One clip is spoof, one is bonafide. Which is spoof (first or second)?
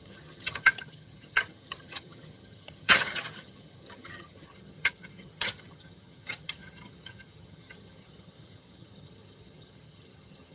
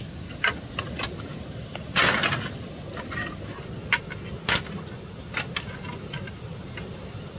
first